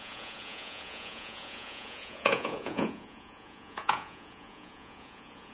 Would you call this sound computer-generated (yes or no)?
yes